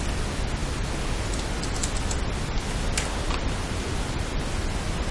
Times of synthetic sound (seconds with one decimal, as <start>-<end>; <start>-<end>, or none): none